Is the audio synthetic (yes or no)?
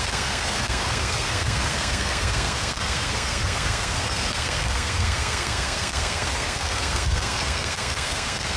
yes